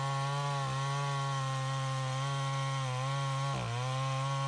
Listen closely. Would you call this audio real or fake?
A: real